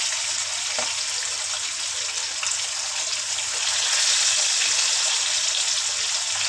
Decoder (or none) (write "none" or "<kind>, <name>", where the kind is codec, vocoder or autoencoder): none